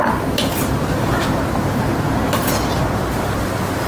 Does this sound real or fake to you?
real